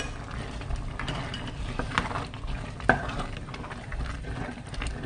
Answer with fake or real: real